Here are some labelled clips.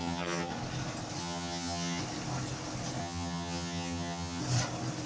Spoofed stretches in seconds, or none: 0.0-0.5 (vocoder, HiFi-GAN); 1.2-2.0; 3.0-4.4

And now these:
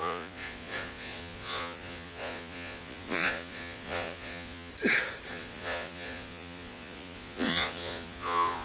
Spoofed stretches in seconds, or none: 0.0-4.7 (vocoder, Vocos); 5.3-8.6

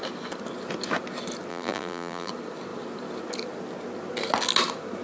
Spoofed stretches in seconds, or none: 1.5-2.3 (vocoder, BigVGAN v2)